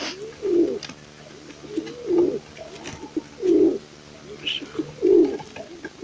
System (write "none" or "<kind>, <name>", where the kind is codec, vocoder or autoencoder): none